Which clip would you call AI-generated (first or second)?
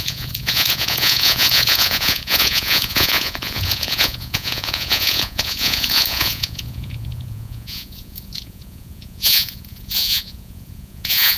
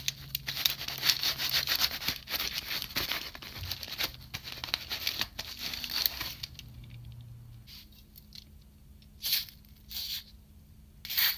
first